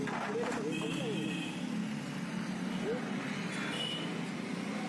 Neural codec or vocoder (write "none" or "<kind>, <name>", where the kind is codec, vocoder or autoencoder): none